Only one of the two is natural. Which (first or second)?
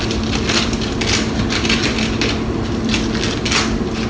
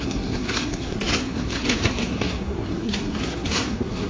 first